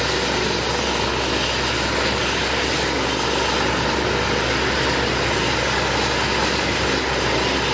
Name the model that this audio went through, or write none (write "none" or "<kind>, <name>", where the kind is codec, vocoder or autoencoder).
none